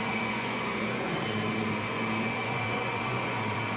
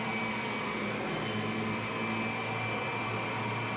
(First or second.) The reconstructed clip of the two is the first